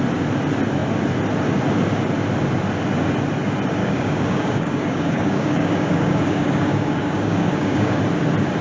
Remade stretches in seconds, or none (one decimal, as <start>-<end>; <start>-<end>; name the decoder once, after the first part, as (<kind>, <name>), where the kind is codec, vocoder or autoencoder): 3.8-8.0 (codec, DAC)